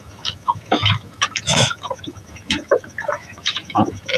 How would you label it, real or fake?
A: fake